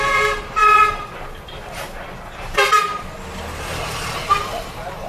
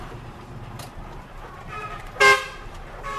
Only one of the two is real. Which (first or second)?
second